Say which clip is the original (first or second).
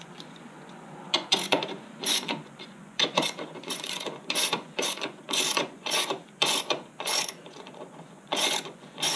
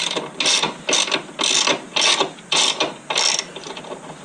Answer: second